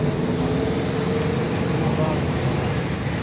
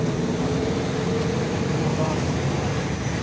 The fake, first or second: second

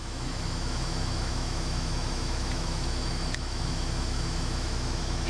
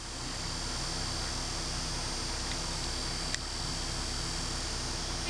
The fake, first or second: first